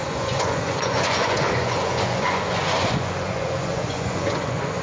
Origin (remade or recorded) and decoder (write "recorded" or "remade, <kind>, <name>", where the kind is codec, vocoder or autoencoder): remade, vocoder, Vocos